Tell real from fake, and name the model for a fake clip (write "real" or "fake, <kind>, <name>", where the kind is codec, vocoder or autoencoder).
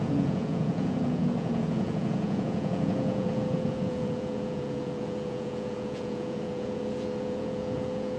fake, vocoder, Vocos